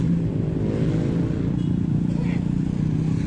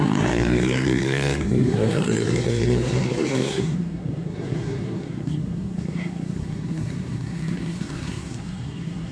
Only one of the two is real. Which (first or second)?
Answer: first